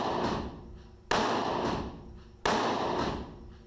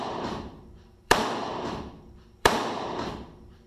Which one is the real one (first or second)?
first